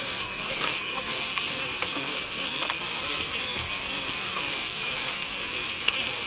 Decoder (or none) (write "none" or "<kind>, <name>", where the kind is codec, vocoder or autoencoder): codec, SNAC